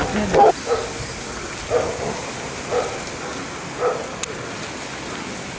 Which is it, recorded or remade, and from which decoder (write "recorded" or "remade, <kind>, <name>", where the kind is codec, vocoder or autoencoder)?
recorded